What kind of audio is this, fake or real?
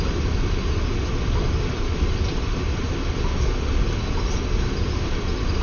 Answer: real